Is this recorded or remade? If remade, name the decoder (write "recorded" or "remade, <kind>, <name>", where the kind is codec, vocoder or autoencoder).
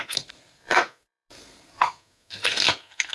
remade, codec, SNAC